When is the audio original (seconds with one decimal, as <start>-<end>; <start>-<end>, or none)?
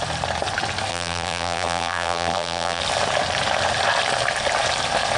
0.0-0.9; 2.8-5.2